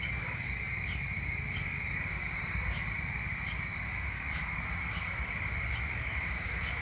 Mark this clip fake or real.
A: fake